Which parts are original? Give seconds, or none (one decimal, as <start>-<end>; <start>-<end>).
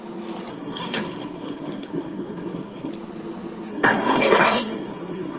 0.0-0.5; 2.9-3.7